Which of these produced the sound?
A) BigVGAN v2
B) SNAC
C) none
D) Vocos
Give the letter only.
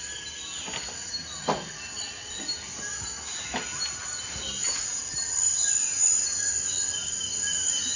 C